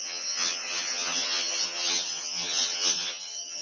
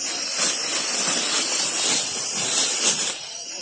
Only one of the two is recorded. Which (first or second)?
second